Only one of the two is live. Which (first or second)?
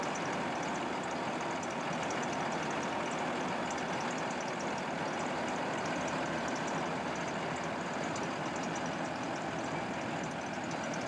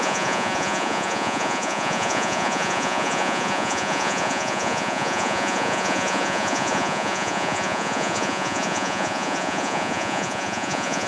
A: first